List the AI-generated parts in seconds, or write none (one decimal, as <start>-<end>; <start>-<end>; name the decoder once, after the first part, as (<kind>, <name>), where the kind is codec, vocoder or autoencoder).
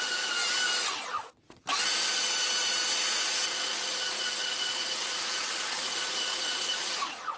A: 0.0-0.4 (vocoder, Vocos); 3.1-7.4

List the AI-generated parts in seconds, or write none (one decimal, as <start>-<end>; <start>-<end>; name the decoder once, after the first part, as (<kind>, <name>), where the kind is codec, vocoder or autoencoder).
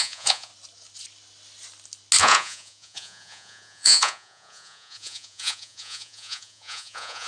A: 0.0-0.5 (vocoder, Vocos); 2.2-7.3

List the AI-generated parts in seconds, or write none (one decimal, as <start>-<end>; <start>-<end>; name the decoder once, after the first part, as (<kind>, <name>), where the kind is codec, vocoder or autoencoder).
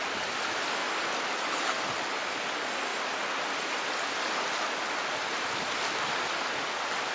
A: none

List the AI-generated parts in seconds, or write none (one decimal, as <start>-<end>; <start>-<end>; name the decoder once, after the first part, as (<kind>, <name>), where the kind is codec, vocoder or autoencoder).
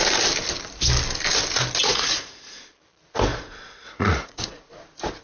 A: 1.8-2.6 (vocoder, Vocos); 3.3-4.6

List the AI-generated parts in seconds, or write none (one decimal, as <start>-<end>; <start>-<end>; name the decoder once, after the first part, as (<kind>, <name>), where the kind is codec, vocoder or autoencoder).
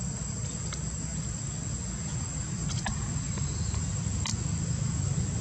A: none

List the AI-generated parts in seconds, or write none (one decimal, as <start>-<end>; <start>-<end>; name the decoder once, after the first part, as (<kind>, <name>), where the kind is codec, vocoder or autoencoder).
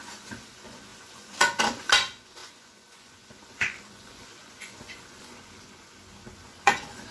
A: 0.0-7.1 (vocoder, Vocos)